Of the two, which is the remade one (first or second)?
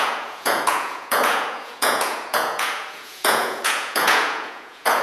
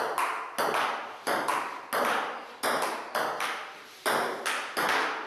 first